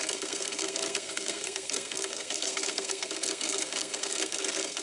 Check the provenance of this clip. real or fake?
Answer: fake